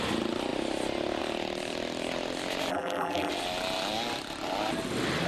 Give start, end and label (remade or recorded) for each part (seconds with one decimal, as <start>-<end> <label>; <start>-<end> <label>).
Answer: 0.0-2.7 recorded; 2.7-3.3 remade; 3.3-5.3 recorded